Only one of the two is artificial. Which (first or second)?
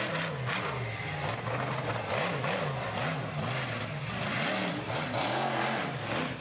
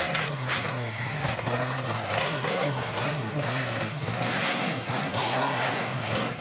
second